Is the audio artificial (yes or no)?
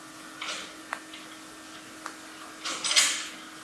no